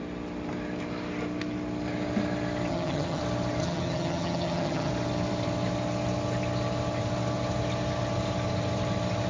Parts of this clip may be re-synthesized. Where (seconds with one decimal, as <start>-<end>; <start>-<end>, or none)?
2.7-3.2; 3.6-4.9